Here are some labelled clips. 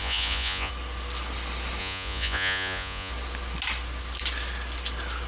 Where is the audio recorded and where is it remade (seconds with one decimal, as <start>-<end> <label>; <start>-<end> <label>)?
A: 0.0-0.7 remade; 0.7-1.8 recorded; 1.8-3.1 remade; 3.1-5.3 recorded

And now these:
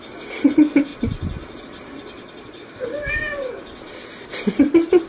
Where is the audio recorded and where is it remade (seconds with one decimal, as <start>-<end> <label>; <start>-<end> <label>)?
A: 0.0-2.6 recorded; 2.6-3.6 remade; 3.6-5.1 recorded

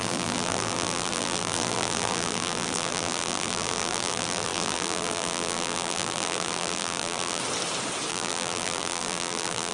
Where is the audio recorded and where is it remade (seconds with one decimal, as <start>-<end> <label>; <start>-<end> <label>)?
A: 0.0-7.4 remade; 7.4-8.1 recorded; 8.1-9.7 remade